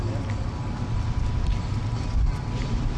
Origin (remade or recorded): recorded